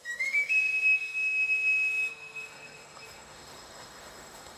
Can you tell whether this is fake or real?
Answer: fake